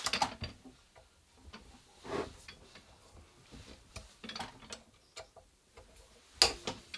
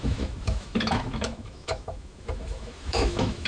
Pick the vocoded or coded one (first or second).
second